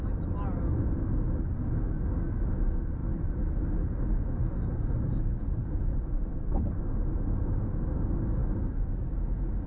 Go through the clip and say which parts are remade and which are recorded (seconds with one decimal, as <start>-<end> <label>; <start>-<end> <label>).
0.0-3.0 recorded; 3.0-6.8 remade; 6.8-9.7 recorded

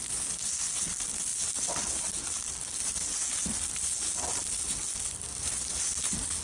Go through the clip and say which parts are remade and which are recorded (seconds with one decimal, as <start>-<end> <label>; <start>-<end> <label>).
0.0-6.4 recorded